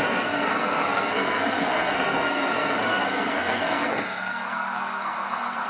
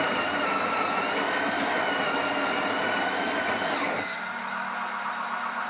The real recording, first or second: second